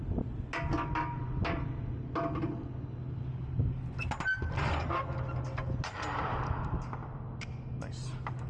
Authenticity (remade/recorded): recorded